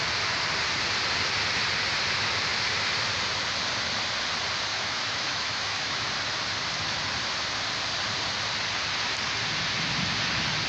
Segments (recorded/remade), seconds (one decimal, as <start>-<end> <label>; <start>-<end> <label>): 0.0-4.7 recorded; 4.7-6.1 remade; 6.1-10.7 recorded